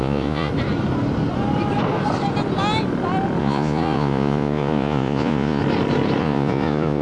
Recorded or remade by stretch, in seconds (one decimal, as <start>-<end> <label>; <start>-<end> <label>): 0.0-0.5 remade; 0.5-3.4 recorded; 3.4-5.6 remade; 5.6-6.2 recorded; 6.2-7.0 remade